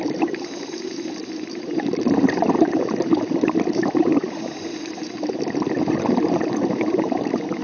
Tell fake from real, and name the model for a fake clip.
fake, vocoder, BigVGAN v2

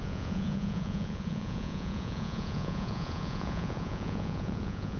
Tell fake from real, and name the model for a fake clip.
fake, vocoder, Vocos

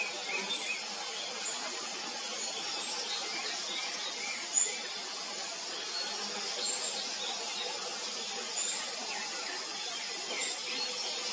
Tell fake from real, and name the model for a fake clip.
real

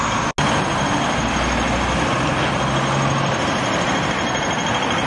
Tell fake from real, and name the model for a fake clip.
real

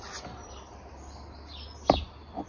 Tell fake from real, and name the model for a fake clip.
real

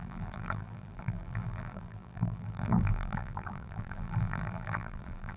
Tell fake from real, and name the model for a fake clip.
fake, vocoder, BigVGAN v2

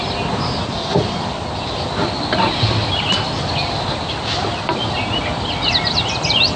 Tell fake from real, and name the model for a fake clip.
real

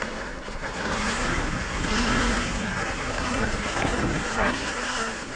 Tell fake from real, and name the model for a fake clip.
fake, codec, SNAC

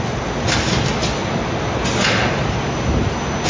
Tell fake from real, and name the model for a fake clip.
real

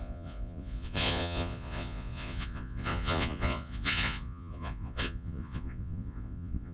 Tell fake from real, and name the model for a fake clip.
fake, vocoder, Vocos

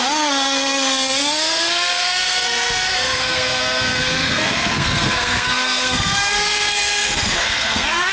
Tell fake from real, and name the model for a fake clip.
fake, codec, SNAC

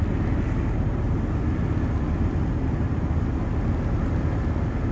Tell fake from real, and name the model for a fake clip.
real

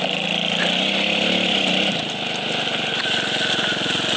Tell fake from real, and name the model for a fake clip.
real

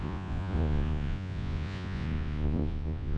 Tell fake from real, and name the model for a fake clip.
fake, vocoder, Vocos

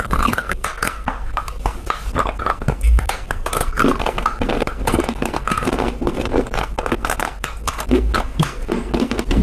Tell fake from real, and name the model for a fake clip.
fake, codec, SNAC